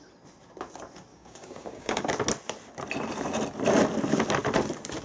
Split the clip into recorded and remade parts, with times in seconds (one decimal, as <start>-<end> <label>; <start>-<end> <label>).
0.0-1.1 recorded; 1.1-2.0 remade; 2.0-5.0 recorded